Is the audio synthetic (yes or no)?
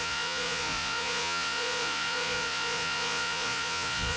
yes